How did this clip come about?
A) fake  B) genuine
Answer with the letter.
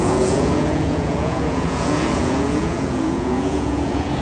A